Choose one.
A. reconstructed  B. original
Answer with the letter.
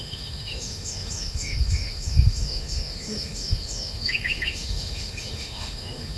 A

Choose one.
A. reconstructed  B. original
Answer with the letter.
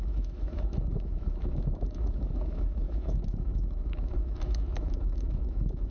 A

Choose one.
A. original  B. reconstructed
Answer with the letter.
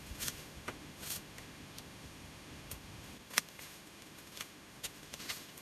B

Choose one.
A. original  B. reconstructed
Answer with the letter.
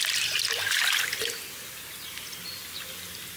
A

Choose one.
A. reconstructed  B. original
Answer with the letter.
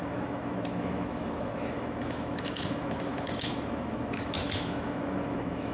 A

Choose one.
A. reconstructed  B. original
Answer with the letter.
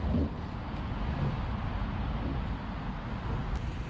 B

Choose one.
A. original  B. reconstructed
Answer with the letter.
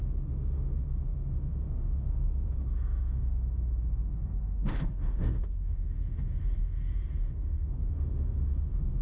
B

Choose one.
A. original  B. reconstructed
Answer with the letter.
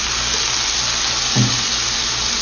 A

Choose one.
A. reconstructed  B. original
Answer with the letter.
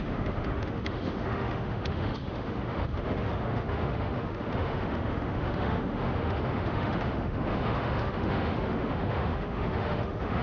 A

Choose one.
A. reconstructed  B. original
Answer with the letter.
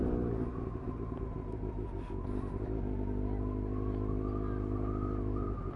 B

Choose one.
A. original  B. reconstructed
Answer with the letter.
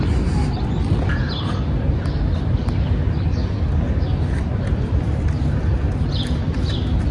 A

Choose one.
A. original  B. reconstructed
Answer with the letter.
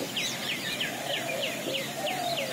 A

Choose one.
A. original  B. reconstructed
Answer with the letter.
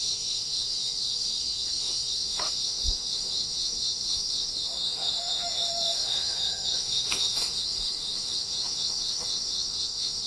B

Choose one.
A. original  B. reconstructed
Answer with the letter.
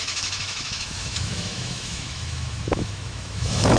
B